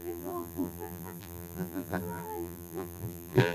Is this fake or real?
fake